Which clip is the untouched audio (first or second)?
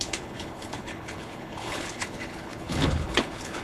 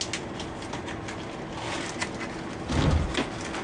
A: second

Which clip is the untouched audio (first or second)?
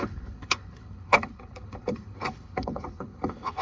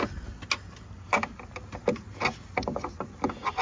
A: second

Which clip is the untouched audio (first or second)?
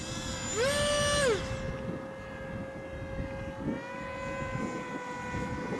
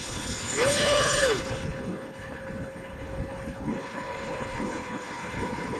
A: first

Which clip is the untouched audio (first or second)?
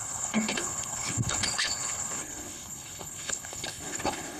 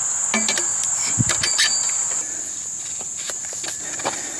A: second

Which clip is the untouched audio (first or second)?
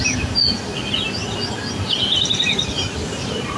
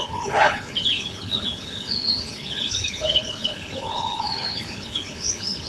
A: first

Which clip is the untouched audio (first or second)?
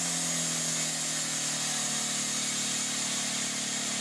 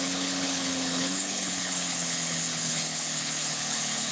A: first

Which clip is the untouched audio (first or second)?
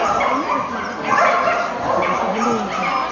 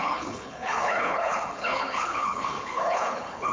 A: first